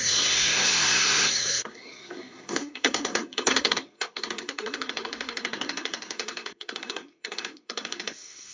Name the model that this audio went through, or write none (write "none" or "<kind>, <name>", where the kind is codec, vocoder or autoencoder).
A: codec, SNAC